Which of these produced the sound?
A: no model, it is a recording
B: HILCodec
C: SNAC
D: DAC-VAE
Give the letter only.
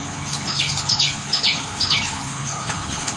B